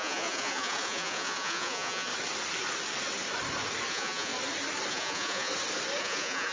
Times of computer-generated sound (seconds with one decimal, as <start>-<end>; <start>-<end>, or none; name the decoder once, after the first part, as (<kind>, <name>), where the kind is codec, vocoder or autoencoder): 0.0-2.1 (vocoder, Vocos); 3.9-4.3; 4.9-5.5; 6.0-6.5